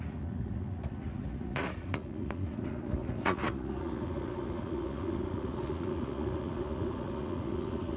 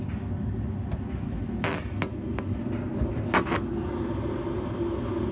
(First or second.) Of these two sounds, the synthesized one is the first